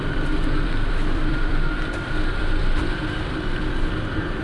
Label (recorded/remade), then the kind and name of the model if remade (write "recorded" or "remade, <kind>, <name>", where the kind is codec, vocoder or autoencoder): remade, vocoder, BigVGAN v2